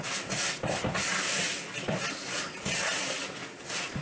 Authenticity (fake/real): real